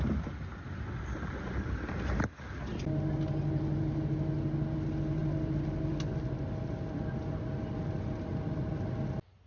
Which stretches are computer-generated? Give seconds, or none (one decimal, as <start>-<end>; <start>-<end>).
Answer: none